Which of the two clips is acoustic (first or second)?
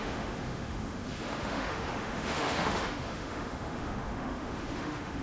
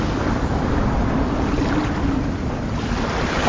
second